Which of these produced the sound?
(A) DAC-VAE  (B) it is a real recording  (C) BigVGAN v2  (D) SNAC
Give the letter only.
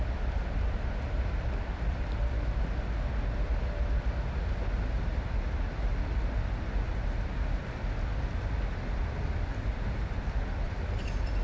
B